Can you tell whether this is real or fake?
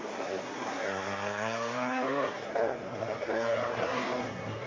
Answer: fake